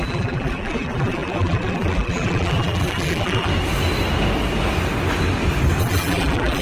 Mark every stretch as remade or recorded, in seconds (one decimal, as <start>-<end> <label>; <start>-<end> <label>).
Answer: 0.0-3.5 remade; 3.5-5.8 recorded; 5.8-6.6 remade